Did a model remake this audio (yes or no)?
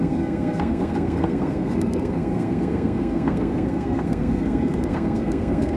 yes